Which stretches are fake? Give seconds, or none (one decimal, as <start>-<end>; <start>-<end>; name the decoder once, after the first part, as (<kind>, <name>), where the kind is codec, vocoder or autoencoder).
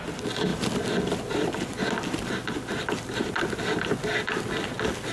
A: none